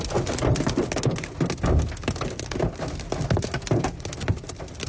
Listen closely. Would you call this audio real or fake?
real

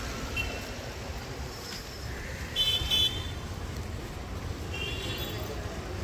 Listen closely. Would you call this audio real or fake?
real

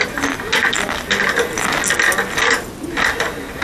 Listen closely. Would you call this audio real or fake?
real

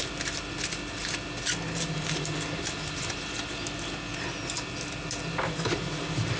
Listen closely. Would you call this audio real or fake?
real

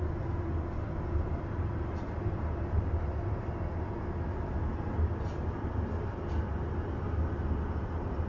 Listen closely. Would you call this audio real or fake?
real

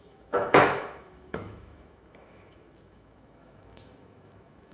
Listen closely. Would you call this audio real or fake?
fake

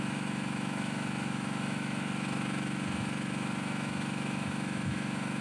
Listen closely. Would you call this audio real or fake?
fake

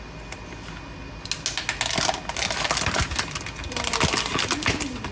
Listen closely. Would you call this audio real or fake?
real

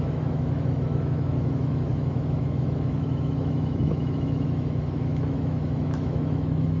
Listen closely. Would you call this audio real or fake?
fake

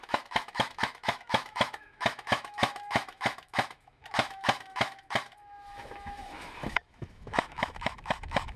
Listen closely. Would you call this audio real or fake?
fake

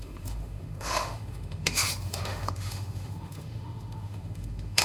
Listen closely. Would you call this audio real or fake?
fake